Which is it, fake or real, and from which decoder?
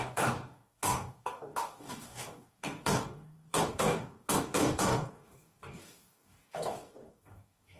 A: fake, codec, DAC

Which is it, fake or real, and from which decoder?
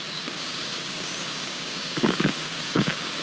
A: fake, codec, DAC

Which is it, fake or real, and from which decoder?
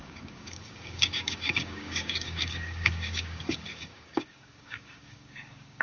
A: fake, codec, DAC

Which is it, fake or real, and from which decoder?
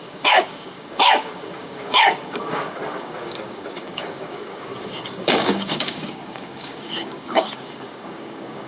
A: fake, codec, DAC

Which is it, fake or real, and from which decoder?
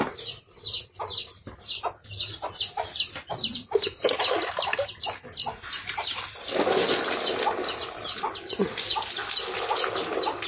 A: real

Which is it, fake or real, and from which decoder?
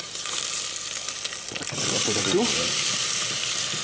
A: real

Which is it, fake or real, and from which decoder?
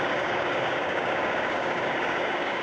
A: fake, codec, DAC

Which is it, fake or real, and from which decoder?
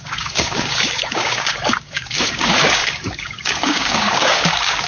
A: fake, codec, DAC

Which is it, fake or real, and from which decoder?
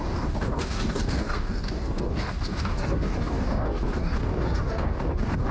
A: fake, codec, DAC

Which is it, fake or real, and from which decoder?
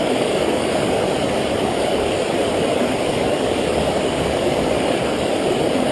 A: fake, codec, DAC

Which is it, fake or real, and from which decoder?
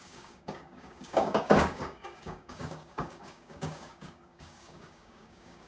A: fake, codec, DAC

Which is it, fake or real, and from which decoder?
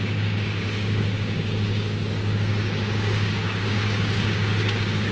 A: fake, codec, DAC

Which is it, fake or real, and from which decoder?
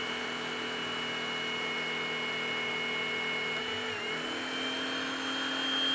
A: real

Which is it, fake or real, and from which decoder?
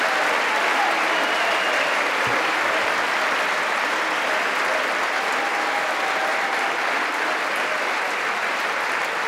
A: real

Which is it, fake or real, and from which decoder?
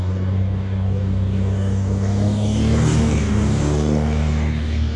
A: fake, codec, DAC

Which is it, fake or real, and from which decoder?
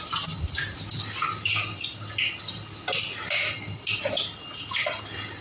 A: real